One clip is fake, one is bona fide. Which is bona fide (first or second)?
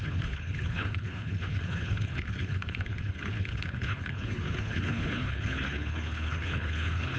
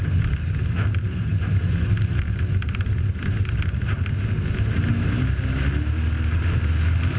second